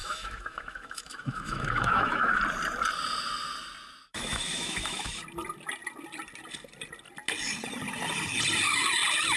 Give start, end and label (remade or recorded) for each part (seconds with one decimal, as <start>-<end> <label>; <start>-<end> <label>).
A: 0.0-2.4 remade; 2.4-4.1 recorded; 4.1-5.2 remade; 5.2-9.4 recorded